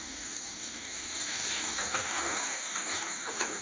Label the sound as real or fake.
fake